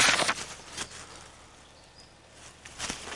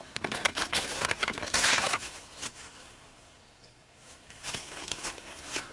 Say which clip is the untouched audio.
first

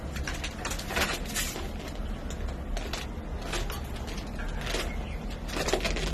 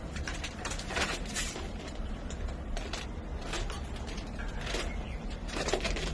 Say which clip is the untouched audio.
first